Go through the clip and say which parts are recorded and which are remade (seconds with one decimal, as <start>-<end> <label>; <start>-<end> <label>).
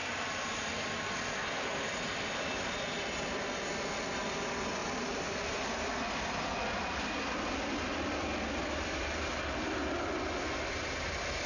0.0-0.7 remade; 0.7-4.8 recorded; 4.8-5.9 remade; 5.9-11.5 recorded